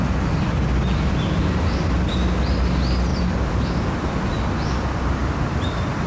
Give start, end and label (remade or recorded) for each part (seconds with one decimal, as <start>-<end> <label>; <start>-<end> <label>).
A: 0.0-0.9 recorded; 0.9-1.4 remade; 1.4-3.1 recorded; 3.1-4.1 remade; 4.1-5.2 recorded; 5.2-6.1 remade